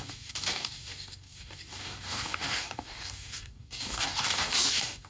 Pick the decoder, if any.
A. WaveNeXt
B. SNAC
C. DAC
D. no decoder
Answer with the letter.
C